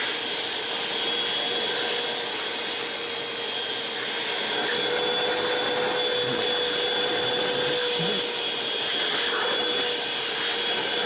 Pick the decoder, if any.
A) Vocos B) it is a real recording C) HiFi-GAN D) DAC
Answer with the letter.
B